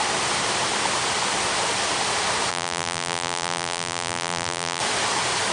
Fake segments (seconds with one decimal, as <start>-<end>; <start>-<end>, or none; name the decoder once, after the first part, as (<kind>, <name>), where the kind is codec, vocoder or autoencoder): 2.5-4.8 (vocoder, BigVGAN v2)

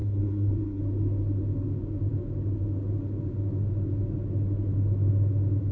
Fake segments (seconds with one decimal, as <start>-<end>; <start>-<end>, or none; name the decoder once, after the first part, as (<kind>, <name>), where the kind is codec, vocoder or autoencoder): 0.0-0.8 (codec, SNAC)

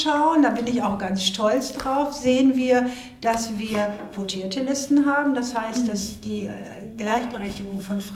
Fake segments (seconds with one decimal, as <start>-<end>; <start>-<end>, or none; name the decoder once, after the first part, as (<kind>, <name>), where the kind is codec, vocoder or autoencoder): 3.7-4.3 (codec, SNAC); 6.0-8.1

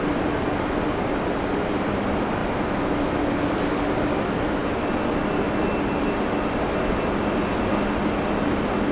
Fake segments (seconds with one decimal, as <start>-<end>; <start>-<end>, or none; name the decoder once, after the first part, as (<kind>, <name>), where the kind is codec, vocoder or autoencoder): none

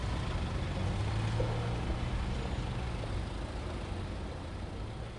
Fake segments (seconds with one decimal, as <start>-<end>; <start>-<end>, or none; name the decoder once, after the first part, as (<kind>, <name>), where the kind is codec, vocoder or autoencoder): none